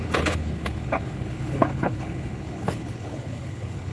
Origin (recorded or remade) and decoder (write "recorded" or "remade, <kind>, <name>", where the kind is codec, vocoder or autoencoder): remade, codec, HILCodec